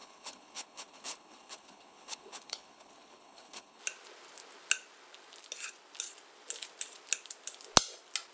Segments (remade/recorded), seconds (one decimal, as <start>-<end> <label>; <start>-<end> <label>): 0.0-3.8 remade; 3.8-8.3 recorded